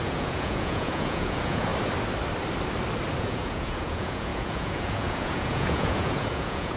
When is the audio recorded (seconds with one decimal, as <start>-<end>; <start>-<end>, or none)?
1.7-3.2